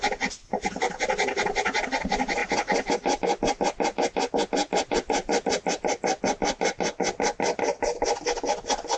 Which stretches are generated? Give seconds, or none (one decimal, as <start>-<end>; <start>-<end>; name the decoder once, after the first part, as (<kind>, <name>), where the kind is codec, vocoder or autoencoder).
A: 4.6-5.4 (vocoder, BigVGAN v2)